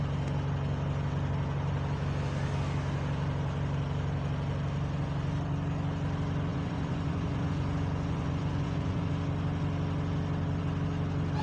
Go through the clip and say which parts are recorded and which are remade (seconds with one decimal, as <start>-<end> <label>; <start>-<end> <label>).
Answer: 0.0-6.5 recorded; 6.5-9.1 remade; 9.1-11.4 recorded